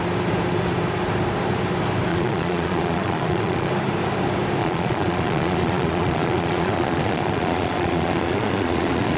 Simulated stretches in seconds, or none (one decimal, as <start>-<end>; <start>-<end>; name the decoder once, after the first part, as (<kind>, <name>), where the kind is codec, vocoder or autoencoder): 2.1-3.7 (vocoder, Vocos); 4.6-9.2